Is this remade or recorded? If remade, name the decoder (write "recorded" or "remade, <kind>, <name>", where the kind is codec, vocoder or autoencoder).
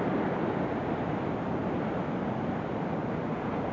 recorded